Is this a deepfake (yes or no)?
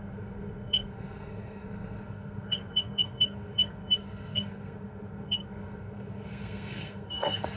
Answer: yes